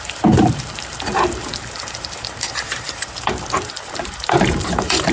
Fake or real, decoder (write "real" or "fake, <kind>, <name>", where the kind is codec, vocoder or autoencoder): fake, vocoder, BigVGAN v2